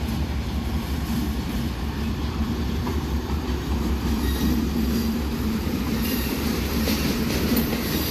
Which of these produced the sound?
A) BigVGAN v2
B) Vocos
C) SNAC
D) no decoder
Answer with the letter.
A